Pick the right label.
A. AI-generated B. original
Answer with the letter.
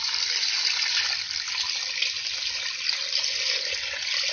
B